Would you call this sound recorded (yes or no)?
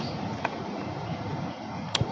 no